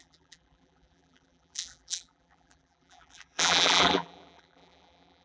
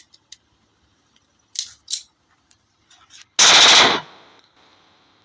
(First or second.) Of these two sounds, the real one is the second